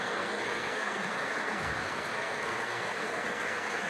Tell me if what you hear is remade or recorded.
remade